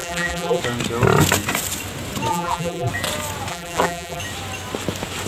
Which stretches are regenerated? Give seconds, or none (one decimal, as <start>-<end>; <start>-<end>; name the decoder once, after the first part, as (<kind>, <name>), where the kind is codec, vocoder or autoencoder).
0.0-0.6 (vocoder, BigVGAN v2); 2.3-2.9; 3.5-4.2